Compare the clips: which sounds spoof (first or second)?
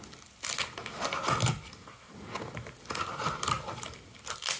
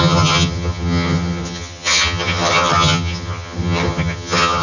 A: second